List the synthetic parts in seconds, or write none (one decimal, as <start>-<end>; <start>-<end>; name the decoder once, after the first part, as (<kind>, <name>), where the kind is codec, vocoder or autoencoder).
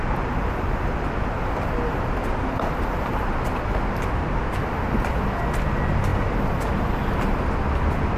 none